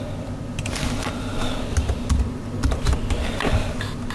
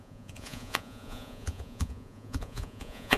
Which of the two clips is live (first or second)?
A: first